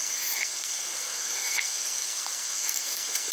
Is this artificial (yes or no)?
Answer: yes